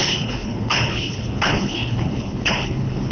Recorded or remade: remade